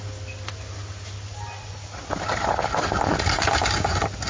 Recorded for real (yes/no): yes